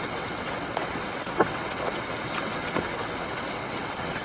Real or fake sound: fake